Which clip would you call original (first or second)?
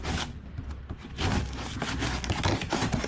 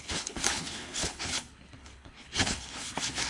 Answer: first